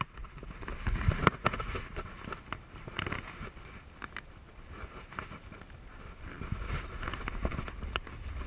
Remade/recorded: recorded